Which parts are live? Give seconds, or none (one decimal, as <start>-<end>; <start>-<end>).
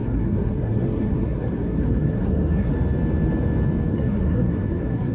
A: 2.7-3.9